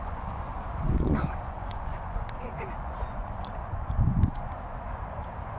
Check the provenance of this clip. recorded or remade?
remade